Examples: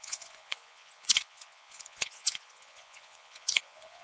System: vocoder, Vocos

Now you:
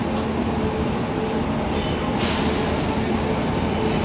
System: none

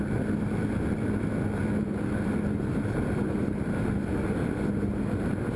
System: none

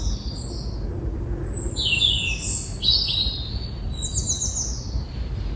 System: none